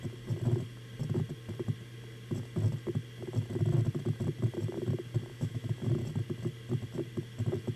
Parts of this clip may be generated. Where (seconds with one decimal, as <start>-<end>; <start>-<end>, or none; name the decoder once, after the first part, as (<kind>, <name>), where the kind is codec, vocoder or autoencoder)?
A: 5.3-5.9 (autoencoder, DAC-VAE)